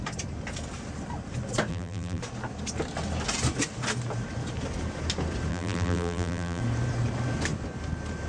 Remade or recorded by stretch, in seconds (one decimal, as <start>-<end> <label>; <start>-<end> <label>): 0.0-1.7 recorded; 1.7-2.2 remade; 2.2-5.5 recorded; 5.5-6.6 remade; 6.6-8.3 recorded